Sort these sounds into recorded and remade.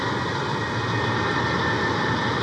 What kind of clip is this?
recorded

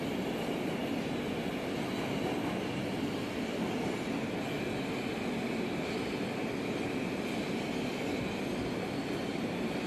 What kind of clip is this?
recorded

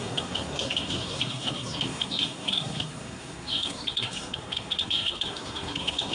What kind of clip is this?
remade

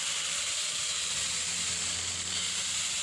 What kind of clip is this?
recorded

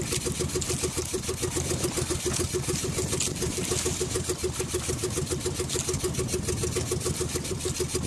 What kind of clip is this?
recorded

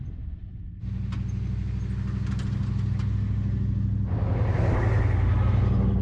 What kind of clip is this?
recorded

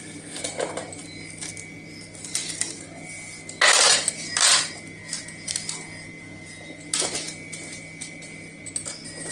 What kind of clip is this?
recorded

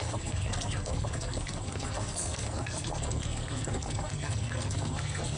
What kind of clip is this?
remade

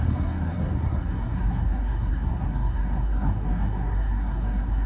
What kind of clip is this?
remade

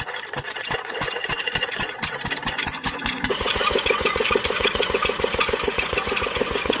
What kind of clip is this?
remade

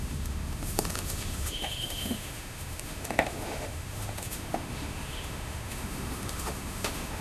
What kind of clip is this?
remade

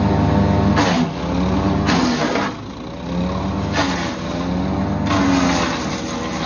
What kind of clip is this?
recorded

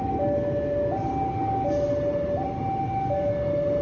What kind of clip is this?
recorded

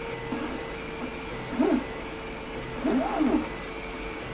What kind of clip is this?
recorded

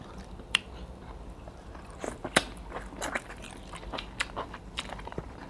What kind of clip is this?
remade